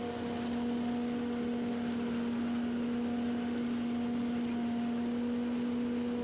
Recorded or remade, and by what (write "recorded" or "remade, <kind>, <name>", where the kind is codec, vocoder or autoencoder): recorded